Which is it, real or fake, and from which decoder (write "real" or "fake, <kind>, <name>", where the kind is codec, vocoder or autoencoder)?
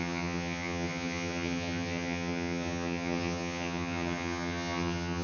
fake, vocoder, HiFi-GAN